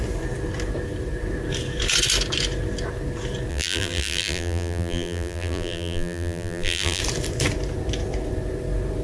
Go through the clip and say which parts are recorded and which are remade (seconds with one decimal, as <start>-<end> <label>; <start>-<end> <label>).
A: 0.0-3.5 recorded; 3.5-7.0 remade; 7.0-9.0 recorded